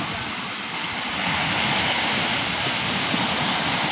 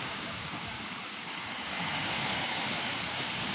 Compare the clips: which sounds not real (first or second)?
second